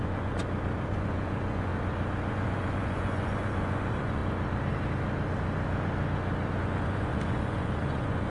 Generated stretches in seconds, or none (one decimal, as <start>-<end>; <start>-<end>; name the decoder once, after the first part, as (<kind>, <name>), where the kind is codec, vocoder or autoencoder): 0.0-0.4 (vocoder, Vocos); 0.9-1.7; 2.3-4.2; 6.6-8.3